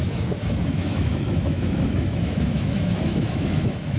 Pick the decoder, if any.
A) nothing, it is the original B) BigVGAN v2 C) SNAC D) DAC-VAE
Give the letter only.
D